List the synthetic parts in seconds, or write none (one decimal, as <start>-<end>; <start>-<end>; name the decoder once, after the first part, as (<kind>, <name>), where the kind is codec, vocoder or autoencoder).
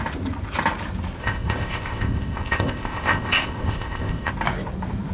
1.2-4.3 (codec, ZipCodec)